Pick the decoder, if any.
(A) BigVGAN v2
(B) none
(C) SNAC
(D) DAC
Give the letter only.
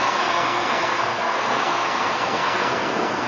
C